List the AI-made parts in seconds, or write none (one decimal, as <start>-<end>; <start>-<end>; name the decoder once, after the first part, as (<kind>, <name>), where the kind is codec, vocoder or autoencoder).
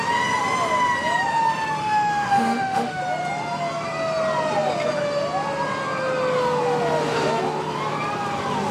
1.8-3.0 (autoencoder, DAC-VAE)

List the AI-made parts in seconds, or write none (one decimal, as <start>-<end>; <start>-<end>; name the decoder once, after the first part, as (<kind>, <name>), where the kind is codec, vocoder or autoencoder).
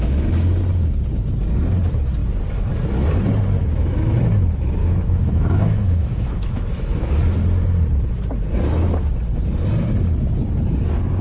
3.6-4.2 (autoencoder, DAC-VAE); 4.8-7.1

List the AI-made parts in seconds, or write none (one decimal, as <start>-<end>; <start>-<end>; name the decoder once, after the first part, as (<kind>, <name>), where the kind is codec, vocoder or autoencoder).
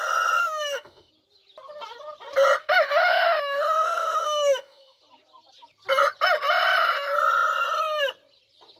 0.4-1.1 (autoencoder, DAC-VAE); 2.6-5.0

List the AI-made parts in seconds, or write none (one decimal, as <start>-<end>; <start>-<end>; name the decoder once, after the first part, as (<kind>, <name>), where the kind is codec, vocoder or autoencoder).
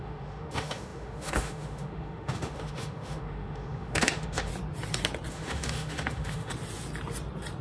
0.0-4.5 (autoencoder, DAC-VAE); 5.3-6.5